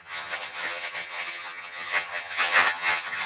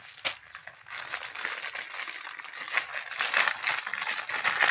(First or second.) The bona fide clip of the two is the second